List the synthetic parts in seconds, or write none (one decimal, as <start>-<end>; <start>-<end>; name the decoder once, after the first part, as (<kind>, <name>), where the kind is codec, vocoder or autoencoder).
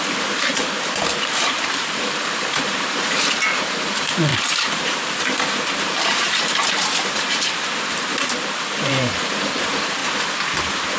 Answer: 0.0-0.5 (vocoder, BigVGAN v2); 1.4-10.0